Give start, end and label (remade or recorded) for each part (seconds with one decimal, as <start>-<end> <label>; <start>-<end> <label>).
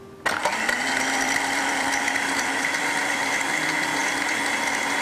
0.0-0.4 recorded; 0.4-3.4 remade; 3.4-5.0 recorded